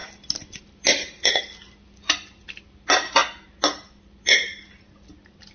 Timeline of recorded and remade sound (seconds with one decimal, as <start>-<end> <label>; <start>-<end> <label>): 0.0-5.5 recorded